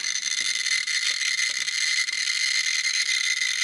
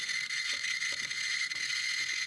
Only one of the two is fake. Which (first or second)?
second